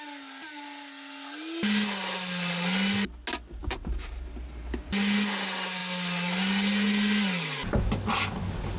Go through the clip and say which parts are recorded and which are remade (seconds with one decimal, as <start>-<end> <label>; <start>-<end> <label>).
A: 0.0-3.6 recorded; 3.6-4.9 remade; 4.9-8.8 recorded